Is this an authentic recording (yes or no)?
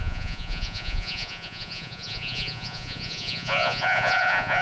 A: no